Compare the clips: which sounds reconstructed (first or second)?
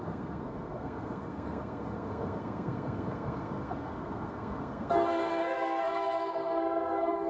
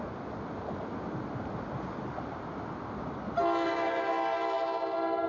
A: first